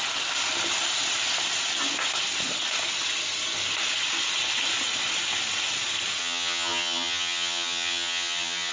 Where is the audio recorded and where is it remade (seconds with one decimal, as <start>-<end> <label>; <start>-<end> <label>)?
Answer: 0.0-6.2 recorded; 6.2-8.7 remade